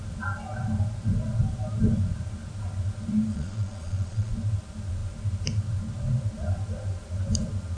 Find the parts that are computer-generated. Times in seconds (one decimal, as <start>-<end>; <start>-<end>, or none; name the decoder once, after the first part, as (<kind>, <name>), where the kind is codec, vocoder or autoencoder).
3.3-4.3 (vocoder, Vocos)